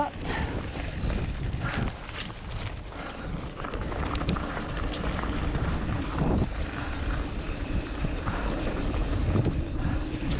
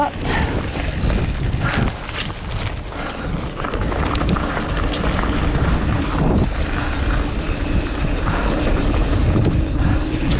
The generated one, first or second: first